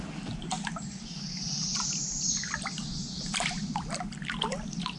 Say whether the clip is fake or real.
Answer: fake